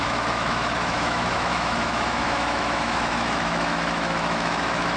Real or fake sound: fake